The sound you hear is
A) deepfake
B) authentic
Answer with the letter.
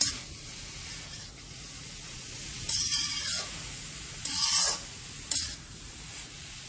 A